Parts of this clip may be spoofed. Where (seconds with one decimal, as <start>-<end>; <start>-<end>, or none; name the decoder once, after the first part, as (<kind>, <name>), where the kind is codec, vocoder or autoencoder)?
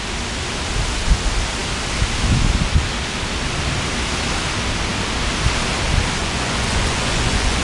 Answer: 6.2-7.6 (vocoder, Vocos)